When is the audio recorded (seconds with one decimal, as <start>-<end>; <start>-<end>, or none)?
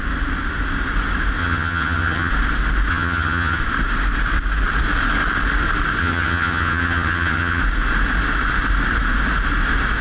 0.0-1.4; 2.3-2.9; 3.6-6.0; 7.6-10.0